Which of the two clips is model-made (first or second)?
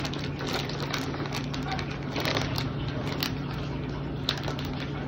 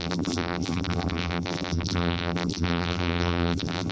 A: second